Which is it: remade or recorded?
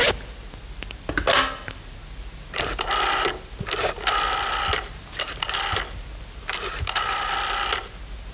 recorded